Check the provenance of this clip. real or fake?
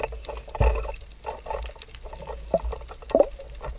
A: real